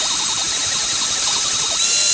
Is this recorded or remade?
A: recorded